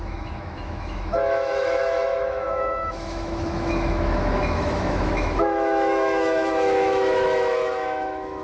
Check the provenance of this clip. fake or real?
fake